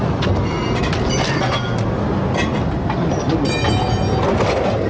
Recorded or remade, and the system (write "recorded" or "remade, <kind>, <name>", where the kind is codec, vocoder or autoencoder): recorded